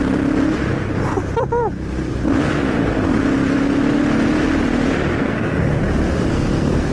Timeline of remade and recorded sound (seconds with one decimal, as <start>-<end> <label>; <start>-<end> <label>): 0.0-5.1 recorded; 5.1-5.8 remade; 5.8-6.3 recorded; 6.3-6.9 remade